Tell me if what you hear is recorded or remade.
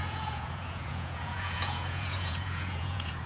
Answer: remade